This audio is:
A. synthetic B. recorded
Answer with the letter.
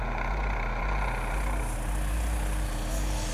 B